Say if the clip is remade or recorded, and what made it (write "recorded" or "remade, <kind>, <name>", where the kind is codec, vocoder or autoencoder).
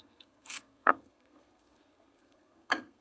remade, codec, SNAC